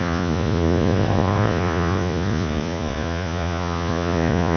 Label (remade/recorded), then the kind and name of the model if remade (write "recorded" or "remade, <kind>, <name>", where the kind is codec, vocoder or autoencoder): remade, vocoder, Vocos